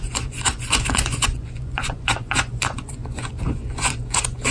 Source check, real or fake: fake